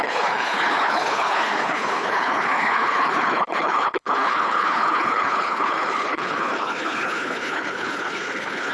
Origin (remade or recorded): remade